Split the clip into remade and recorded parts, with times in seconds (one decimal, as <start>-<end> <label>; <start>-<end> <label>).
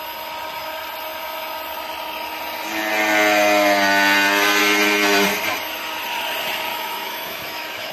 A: 0.0-6.7 recorded; 6.7-7.9 remade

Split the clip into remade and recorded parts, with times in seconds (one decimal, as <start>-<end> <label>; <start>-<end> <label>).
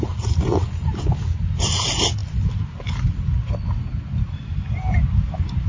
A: 0.0-5.7 recorded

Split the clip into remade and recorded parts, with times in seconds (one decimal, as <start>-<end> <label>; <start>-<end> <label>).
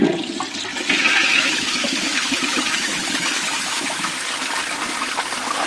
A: 0.0-0.7 recorded; 0.7-4.1 remade; 4.1-5.7 recorded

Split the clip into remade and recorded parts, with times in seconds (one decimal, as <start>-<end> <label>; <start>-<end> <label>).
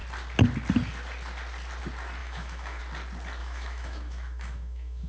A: 0.0-2.2 recorded; 2.2-2.8 remade; 2.8-3.4 recorded; 3.4-5.1 remade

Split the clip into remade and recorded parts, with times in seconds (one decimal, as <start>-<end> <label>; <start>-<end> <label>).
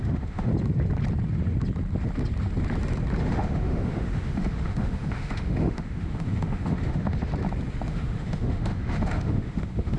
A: 0.0-0.5 remade; 0.5-3.2 recorded; 3.2-7.3 remade; 7.3-7.9 recorded; 7.9-10.0 remade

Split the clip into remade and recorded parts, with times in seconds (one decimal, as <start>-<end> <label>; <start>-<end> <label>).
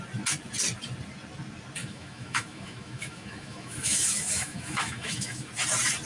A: 0.0-1.8 recorded; 1.8-5.5 remade; 5.5-6.1 recorded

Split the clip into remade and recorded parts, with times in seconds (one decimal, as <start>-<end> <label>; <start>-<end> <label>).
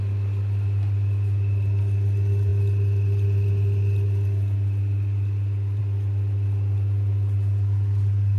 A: 0.0-8.4 recorded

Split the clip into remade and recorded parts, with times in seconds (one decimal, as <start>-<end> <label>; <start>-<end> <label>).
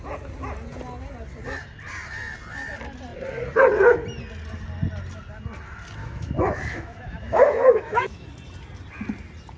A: 0.0-6.0 recorded; 6.0-8.3 remade; 8.3-9.6 recorded